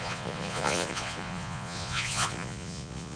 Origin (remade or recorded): remade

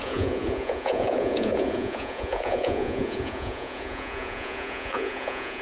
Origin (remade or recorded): remade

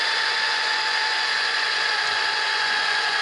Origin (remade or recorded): remade